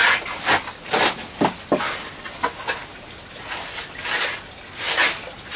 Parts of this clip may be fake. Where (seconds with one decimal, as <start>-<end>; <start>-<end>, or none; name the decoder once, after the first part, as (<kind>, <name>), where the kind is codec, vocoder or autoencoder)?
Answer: none